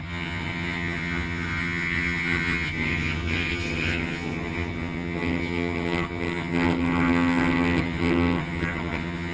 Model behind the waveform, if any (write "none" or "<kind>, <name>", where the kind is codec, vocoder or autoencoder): vocoder, HiFi-GAN